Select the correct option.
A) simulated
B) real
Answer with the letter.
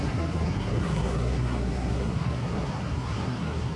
A